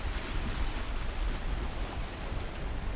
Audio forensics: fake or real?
real